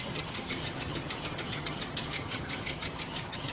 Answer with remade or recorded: remade